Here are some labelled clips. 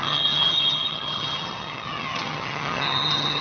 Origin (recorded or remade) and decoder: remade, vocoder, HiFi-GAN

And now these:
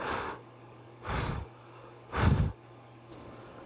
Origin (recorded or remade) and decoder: remade, codec, DAC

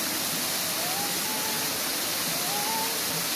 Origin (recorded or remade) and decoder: recorded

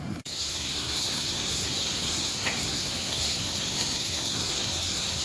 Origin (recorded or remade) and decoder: remade, codec, SNAC